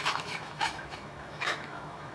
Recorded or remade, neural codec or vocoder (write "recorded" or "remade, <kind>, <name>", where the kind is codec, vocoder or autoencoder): remade, autoencoder, DAC-VAE